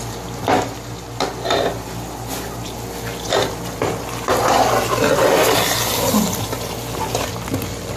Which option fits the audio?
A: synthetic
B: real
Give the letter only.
B